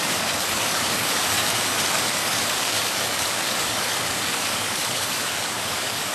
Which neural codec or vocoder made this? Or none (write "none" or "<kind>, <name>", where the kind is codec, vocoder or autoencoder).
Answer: codec, DAC